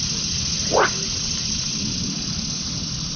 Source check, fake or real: real